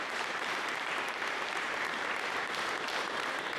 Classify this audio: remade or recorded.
remade